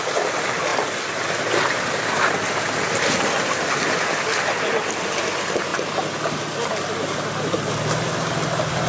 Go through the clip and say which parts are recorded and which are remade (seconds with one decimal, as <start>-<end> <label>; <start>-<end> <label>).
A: 0.0-8.9 recorded